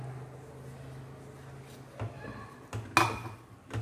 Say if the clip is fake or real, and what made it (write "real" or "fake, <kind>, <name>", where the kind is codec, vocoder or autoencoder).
real